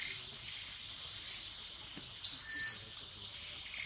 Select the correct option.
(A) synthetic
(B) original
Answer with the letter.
B